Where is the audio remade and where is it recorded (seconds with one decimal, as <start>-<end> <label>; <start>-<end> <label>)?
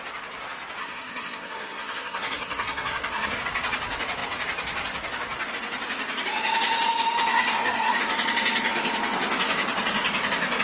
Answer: 0.0-0.8 recorded; 0.8-3.4 remade; 3.4-7.3 recorded; 7.3-8.0 remade; 8.0-10.6 recorded